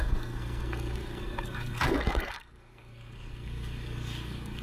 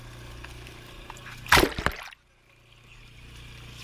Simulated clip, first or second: first